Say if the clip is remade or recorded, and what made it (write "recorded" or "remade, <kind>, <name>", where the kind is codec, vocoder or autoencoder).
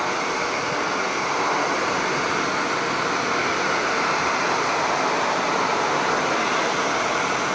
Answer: recorded